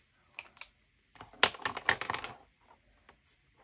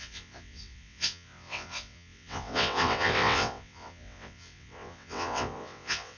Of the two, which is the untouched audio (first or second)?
first